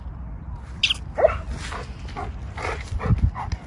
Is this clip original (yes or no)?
yes